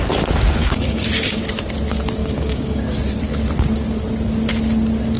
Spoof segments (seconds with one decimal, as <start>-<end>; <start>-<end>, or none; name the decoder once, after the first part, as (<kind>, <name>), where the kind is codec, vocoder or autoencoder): 0.6-1.5 (codec, DAC); 2.2-2.8